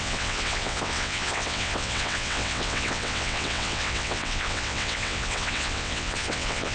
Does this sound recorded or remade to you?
remade